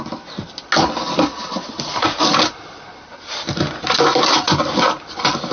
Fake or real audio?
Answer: real